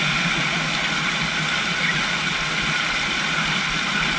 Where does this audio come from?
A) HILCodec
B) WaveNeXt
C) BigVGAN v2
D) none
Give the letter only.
D